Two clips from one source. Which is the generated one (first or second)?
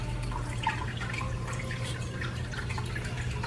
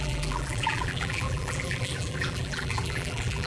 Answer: second